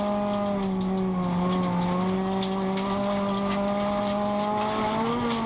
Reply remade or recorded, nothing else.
recorded